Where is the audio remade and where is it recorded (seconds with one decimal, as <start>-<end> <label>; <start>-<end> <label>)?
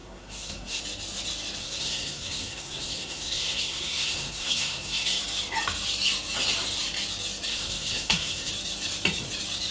0.0-0.8 remade; 0.8-1.6 recorded; 1.6-5.2 remade; 5.2-7.5 recorded; 7.5-8.5 remade; 8.5-9.7 recorded